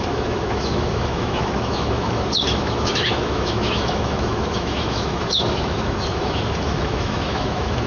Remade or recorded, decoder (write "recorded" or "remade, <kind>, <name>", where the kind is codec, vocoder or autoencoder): remade, autoencoder, DAC-VAE